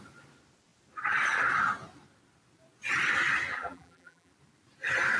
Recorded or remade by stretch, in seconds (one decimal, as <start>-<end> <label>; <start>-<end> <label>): 0.0-3.5 recorded; 3.5-4.3 remade; 4.3-5.2 recorded